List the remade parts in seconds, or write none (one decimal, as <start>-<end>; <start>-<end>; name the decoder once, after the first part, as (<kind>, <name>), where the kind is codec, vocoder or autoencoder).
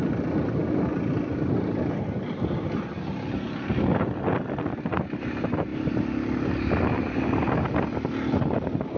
none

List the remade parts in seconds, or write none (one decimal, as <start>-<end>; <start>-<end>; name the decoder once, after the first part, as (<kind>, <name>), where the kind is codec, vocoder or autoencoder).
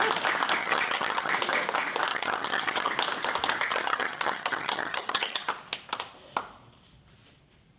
0.6-1.3 (vocoder, HiFi-GAN); 2.1-2.9; 3.7-5.5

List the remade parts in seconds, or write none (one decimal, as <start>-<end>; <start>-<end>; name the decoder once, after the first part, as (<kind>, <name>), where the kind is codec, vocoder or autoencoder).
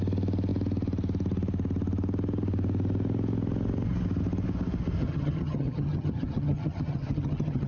5.0-7.7 (vocoder, HiFi-GAN)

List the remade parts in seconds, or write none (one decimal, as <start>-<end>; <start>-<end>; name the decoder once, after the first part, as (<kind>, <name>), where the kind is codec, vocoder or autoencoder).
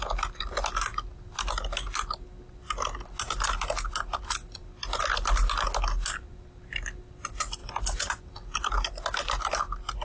none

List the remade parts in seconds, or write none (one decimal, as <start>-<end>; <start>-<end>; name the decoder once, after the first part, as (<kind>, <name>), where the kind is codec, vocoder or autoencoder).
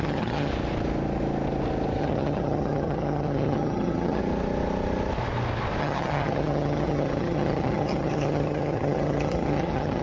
0.0-0.5 (vocoder, HiFi-GAN); 2.0-4.2; 5.8-10.0